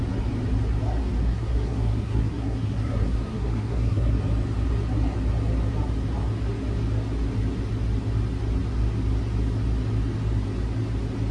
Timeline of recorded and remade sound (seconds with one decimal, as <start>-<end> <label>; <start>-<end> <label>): 0.0-1.2 recorded; 1.2-4.2 remade; 4.2-11.3 recorded